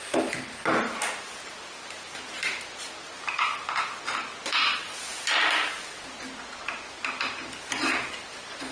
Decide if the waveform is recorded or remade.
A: recorded